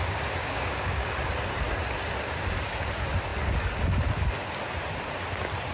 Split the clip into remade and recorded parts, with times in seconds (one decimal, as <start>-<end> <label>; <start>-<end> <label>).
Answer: 0.0-0.4 recorded; 0.4-1.1 remade; 1.1-5.7 recorded